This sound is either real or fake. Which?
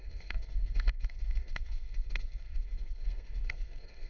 fake